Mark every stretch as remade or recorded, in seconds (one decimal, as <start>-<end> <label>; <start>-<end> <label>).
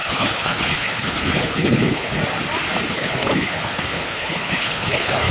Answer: 0.0-2.2 remade; 2.2-2.9 recorded; 2.9-5.3 remade